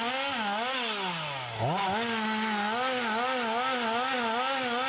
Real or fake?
real